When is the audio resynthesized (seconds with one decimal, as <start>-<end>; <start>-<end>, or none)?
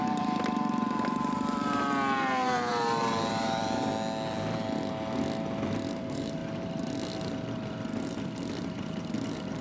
0.0-3.9; 5.9-6.4; 8.8-9.6